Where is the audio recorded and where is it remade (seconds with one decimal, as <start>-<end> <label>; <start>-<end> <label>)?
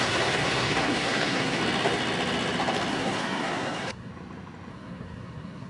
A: 0.0-1.6 remade; 1.6-2.9 recorded; 2.9-4.1 remade; 4.1-4.7 recorded; 4.7-5.7 remade